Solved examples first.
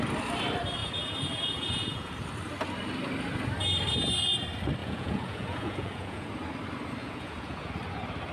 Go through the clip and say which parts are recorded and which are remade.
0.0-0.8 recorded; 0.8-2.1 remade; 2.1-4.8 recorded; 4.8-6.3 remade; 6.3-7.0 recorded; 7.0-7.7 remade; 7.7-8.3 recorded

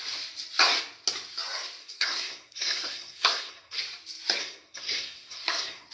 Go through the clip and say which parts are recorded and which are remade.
0.0-1.8 recorded; 1.8-3.8 remade; 3.8-4.4 recorded; 4.4-5.9 remade

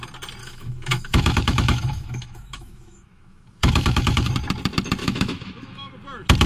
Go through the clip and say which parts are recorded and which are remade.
0.0-0.4 recorded; 0.4-4.3 remade; 4.3-5.0 recorded; 5.0-5.9 remade; 5.9-6.5 recorded

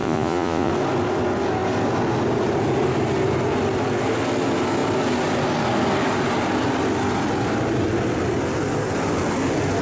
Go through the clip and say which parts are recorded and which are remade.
0.0-0.7 remade; 0.7-9.8 recorded

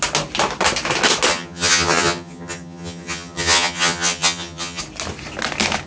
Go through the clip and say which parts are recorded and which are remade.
0.0-1.3 recorded; 1.3-4.8 remade; 4.8-5.9 recorded

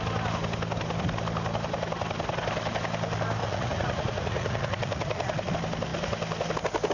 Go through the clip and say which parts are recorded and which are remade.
0.0-3.4 recorded; 3.4-5.5 remade; 5.5-6.9 recorded